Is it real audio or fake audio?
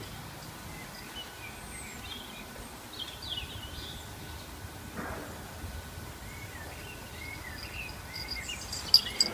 real